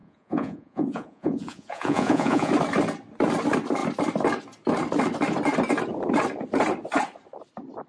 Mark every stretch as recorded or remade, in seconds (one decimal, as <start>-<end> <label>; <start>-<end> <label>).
0.0-2.5 remade; 2.5-7.9 recorded

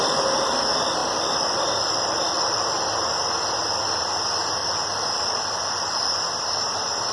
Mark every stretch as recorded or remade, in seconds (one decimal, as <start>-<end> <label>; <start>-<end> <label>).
0.0-1.0 recorded; 1.0-2.6 remade; 2.6-4.6 recorded; 4.6-5.8 remade; 5.8-7.1 recorded

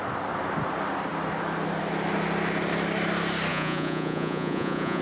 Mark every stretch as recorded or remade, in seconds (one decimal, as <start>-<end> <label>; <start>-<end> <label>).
0.0-3.5 recorded; 3.5-5.0 remade